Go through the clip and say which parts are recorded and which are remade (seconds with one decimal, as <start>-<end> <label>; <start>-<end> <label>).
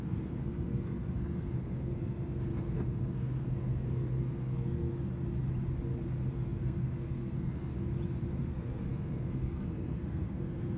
0.0-5.1 remade; 5.1-6.3 recorded; 6.3-7.7 remade; 7.7-8.4 recorded; 8.4-10.8 remade